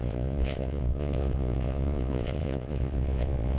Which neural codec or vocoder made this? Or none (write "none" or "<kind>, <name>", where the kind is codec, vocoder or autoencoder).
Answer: vocoder, Vocos